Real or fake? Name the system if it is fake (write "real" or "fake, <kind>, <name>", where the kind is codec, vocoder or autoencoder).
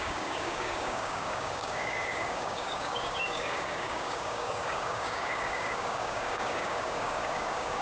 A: fake, codec, DAC